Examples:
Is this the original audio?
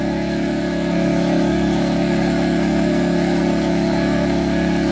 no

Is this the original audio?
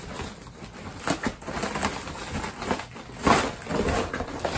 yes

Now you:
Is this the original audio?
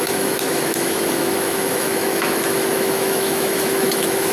no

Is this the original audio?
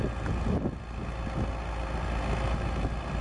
yes